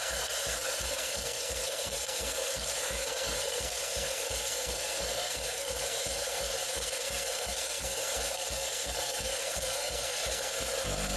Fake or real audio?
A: fake